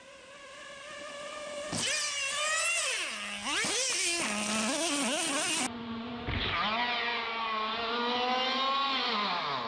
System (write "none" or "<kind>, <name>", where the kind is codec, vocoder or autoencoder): none